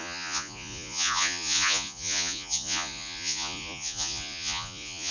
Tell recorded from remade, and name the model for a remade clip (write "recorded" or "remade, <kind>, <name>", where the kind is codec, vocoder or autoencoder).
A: remade, vocoder, Vocos